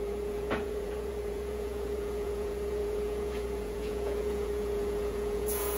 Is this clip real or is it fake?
fake